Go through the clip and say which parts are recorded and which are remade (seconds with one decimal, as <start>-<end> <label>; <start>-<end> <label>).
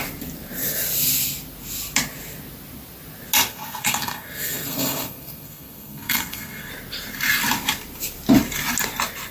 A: 0.0-3.5 recorded; 3.5-6.7 remade; 6.7-9.3 recorded